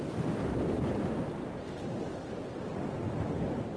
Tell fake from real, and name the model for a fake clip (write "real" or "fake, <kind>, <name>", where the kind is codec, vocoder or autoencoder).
real